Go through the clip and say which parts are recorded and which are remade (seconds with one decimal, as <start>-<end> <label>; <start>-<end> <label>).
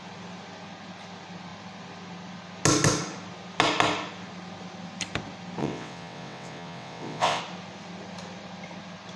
0.0-5.6 recorded; 5.6-7.4 remade; 7.4-9.2 recorded